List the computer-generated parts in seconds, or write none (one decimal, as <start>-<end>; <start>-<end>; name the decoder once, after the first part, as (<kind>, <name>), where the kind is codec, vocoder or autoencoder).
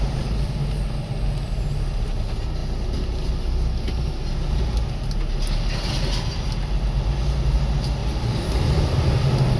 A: 8.0-8.8 (vocoder, BigVGAN v2)